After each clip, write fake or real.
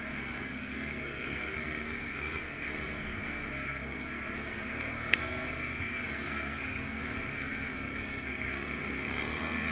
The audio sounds fake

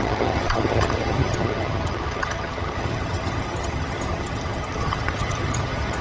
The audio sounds fake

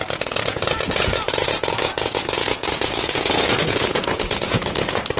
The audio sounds fake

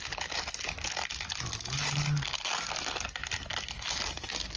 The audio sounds real